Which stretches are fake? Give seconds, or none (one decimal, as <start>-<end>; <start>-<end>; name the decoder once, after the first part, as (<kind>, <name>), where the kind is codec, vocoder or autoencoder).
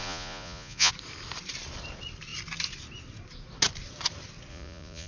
0.0-0.9 (vocoder, Vocos); 4.5-5.1